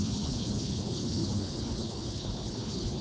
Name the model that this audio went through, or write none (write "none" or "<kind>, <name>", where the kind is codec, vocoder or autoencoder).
codec, HILCodec